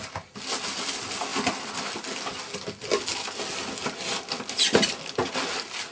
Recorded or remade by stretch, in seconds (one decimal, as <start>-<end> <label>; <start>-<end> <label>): 0.0-5.9 recorded